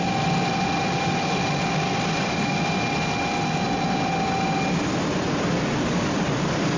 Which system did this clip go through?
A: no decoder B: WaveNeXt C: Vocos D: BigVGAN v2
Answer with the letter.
A